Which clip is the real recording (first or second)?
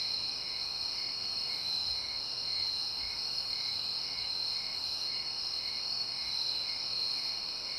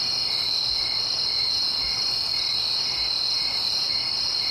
second